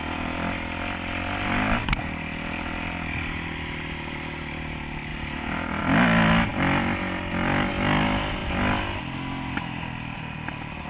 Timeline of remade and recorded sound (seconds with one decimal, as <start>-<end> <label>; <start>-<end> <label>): 0.0-10.9 recorded